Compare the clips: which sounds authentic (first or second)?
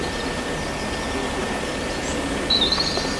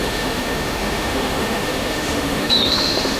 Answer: first